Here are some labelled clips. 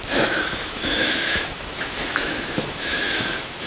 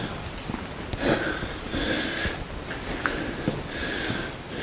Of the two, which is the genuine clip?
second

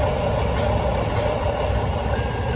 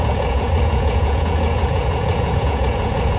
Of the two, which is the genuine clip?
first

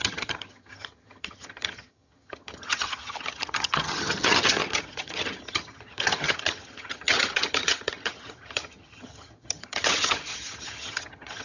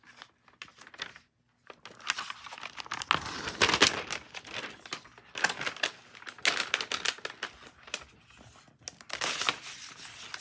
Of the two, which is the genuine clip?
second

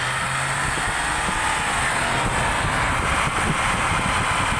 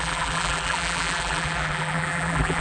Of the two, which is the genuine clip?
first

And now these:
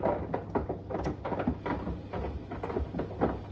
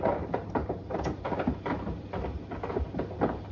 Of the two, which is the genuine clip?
first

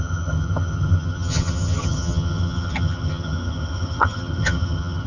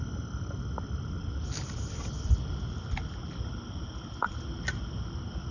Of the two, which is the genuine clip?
second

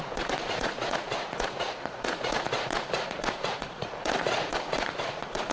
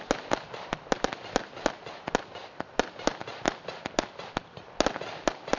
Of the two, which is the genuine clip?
second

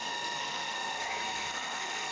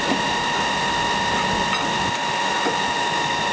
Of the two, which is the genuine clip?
second